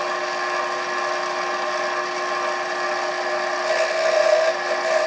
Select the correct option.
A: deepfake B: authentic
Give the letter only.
B